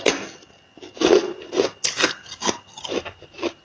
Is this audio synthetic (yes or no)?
no